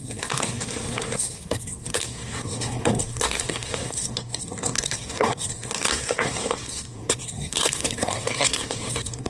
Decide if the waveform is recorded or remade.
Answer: remade